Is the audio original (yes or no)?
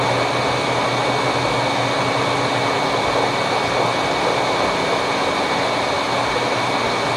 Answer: yes